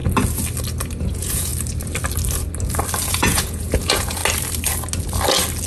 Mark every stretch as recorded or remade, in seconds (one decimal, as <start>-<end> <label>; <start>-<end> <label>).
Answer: 0.0-1.0 recorded; 1.0-1.5 remade; 1.5-3.1 recorded; 3.1-4.2 remade; 4.2-5.7 recorded